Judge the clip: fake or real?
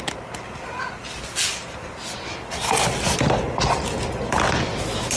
real